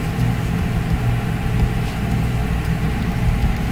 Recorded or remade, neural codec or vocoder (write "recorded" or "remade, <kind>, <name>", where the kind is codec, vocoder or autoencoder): recorded